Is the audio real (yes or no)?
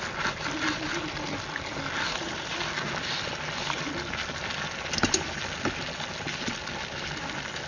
yes